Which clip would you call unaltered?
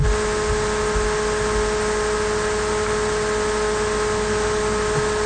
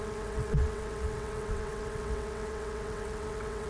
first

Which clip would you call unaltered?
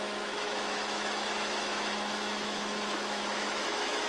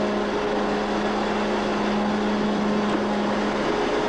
second